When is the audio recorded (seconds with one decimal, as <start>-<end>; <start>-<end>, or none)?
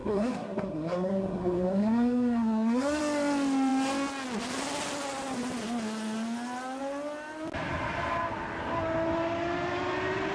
3.0-10.3